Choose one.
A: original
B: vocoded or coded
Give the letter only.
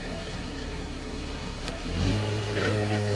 B